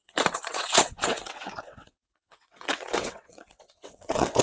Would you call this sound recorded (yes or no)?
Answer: no